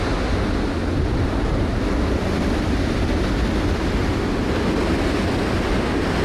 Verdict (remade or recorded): recorded